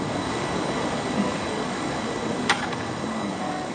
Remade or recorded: remade